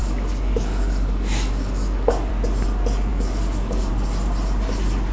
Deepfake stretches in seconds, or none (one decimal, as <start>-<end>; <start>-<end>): 0.0-2.3; 3.1-3.9